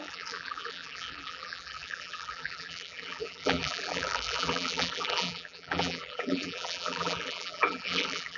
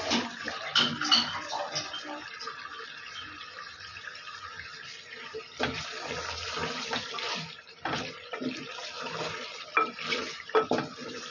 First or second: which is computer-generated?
first